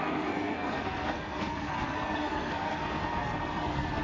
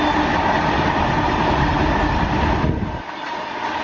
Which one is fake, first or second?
first